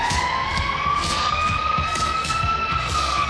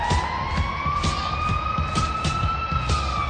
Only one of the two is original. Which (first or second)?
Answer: second